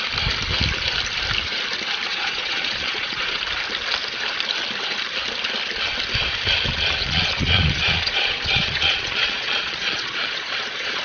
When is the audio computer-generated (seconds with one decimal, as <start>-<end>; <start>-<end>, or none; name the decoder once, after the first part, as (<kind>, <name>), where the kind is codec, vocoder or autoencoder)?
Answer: 2.1-3.4 (vocoder, Vocos); 6.7-11.0